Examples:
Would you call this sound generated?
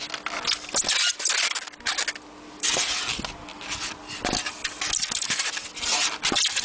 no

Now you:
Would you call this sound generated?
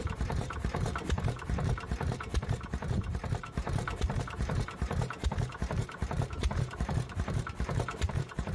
yes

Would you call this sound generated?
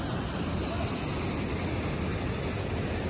no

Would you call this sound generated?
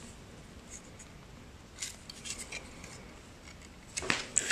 no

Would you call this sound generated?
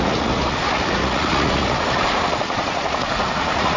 yes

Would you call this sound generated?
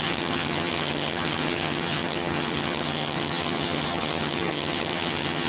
yes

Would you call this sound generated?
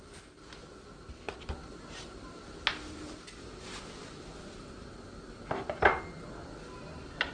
no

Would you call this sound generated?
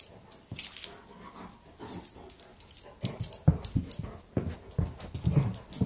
no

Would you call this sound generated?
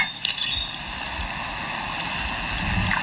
no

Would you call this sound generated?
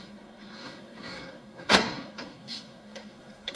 yes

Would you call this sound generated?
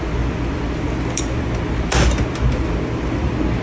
no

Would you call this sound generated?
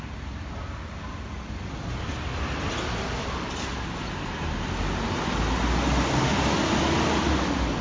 no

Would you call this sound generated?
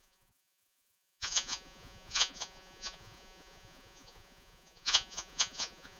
yes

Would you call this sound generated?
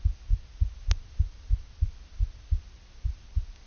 no